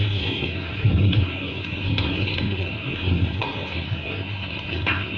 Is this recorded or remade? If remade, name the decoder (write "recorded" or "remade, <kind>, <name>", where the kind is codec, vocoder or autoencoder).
remade, codec, SNAC